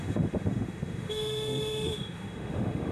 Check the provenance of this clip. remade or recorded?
remade